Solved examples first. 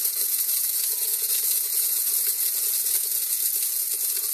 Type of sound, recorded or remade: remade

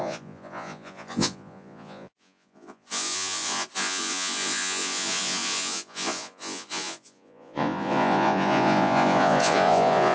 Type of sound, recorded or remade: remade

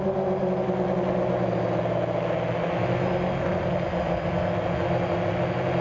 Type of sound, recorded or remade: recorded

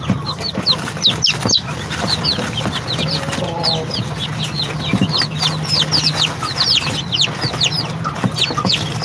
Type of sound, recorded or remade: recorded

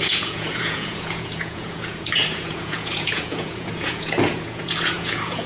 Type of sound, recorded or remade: remade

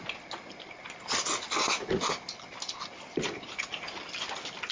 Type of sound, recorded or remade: recorded